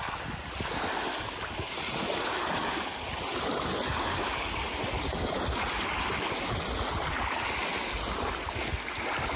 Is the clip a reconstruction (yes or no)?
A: no